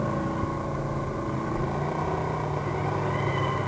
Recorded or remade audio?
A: recorded